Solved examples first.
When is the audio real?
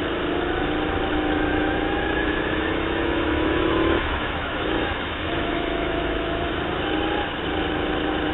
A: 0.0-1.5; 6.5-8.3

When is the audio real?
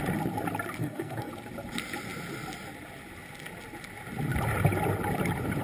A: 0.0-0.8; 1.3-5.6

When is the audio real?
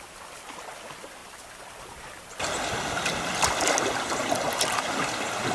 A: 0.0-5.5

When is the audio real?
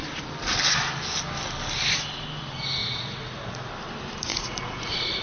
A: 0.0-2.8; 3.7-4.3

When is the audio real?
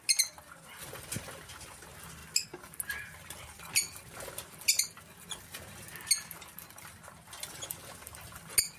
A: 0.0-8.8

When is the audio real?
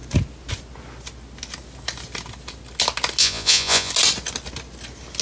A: 0.0-3.2; 3.9-5.2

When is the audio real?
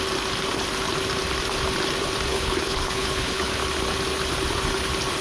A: 0.0-2.3; 3.5-5.2